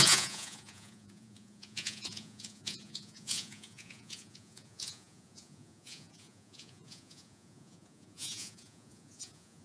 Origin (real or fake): fake